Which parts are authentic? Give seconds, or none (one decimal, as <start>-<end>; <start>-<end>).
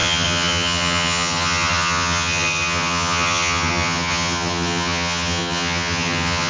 none